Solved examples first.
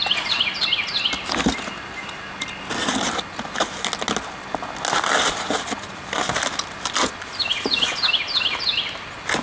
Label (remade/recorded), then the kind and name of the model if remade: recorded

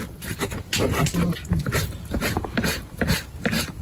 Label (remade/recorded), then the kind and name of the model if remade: recorded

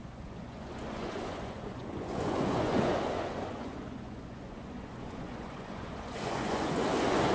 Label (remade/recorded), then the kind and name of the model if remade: remade, vocoder, Vocos